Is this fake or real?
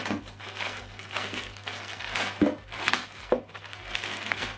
fake